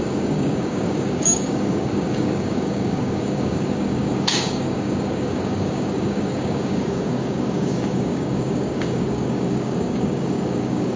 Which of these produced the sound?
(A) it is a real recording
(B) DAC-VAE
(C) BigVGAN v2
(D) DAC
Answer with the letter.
D